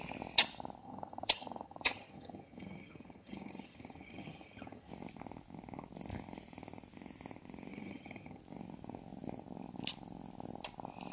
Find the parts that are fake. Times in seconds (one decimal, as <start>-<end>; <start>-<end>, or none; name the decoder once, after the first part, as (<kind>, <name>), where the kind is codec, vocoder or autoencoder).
0.8-4.9 (vocoder, HiFi-GAN); 7.7-8.4